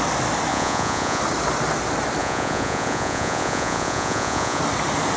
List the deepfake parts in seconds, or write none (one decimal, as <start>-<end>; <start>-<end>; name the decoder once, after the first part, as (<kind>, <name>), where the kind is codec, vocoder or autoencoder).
0.5-1.2 (vocoder, Vocos); 2.2-4.6